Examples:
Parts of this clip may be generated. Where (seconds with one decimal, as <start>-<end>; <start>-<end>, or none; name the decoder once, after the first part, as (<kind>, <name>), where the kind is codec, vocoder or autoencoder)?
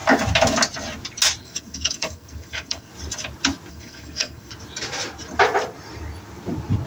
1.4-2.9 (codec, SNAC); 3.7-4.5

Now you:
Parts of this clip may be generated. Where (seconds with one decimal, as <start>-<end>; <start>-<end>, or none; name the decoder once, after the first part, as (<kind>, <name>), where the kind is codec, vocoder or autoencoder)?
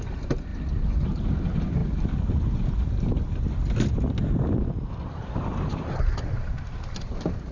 none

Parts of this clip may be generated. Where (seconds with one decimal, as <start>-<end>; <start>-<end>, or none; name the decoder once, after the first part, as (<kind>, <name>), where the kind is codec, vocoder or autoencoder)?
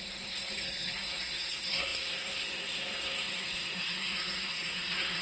0.0-5.2 (codec, SNAC)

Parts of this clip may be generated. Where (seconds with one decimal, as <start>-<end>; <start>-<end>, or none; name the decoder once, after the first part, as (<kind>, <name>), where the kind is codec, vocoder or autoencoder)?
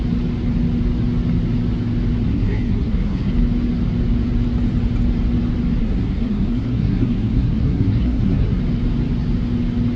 2.3-3.3 (codec, SNAC); 5.8-8.6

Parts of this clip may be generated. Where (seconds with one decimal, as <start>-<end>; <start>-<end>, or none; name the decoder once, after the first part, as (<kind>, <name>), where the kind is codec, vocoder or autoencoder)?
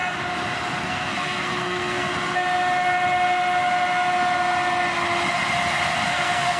0.8-2.1 (codec, SNAC); 6.1-6.6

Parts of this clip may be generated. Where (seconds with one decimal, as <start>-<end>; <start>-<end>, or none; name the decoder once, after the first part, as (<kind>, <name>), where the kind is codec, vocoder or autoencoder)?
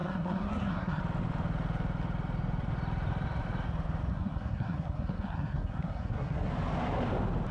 0.0-1.0 (codec, SNAC); 4.1-6.5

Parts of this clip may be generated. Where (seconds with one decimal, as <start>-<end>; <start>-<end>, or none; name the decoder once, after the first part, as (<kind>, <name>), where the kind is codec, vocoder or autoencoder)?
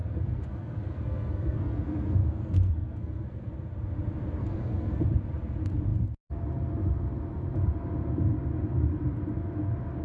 0.0-3.5 (codec, SNAC); 4.4-5.0